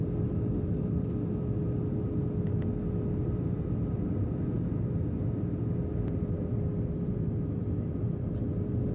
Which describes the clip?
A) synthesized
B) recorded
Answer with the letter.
B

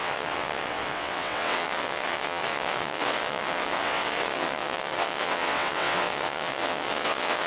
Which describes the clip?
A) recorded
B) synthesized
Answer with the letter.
B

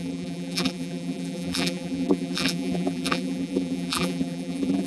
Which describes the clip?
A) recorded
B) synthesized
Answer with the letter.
B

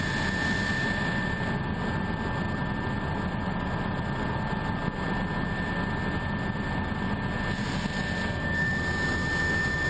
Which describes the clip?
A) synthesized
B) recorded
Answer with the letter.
B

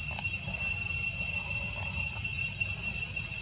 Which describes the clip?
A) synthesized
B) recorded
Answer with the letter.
A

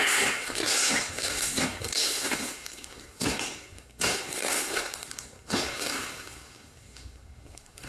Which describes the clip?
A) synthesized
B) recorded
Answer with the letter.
A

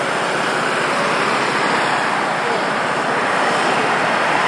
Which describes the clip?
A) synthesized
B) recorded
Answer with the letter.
B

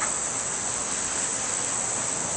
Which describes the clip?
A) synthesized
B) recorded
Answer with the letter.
B